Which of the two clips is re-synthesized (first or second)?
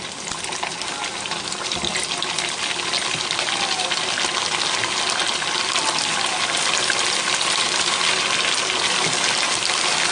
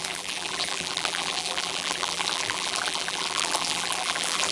second